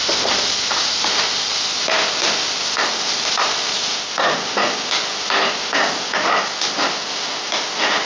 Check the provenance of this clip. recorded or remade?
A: recorded